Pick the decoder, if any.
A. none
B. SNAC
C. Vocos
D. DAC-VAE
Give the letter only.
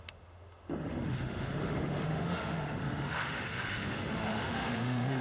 D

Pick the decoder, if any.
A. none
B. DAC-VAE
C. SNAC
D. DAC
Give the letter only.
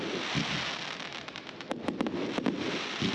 A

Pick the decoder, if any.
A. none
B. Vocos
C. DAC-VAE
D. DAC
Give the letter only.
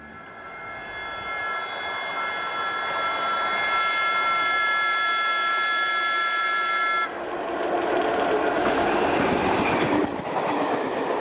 A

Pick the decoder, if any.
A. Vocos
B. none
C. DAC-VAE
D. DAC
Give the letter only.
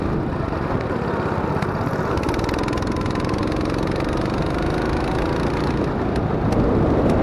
B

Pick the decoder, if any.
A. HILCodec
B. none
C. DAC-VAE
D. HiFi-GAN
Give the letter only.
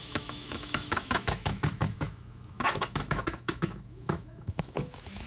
C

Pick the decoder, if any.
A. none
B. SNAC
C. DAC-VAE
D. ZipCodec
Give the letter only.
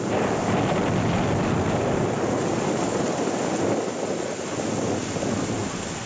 A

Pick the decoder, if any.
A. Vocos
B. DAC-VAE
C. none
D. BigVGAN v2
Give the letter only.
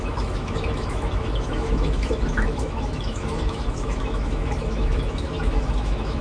B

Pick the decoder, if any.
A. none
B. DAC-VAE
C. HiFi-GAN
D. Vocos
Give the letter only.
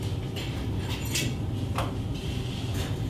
A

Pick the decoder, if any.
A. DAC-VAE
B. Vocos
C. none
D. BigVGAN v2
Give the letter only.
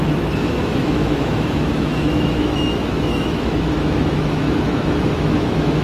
A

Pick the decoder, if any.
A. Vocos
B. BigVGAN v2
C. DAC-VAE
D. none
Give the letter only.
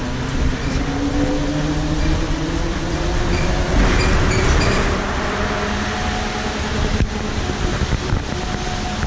D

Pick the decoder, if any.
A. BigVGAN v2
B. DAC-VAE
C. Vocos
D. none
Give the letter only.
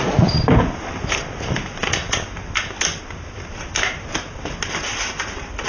D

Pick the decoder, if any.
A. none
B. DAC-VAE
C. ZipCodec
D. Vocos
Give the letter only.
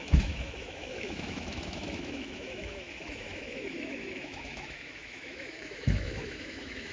B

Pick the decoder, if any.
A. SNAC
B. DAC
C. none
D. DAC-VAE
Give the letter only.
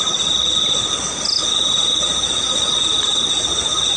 C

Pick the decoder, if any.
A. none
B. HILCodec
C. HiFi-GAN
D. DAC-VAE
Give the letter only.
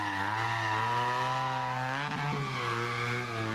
A